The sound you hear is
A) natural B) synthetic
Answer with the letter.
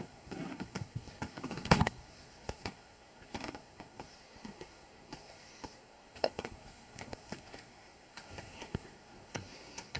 B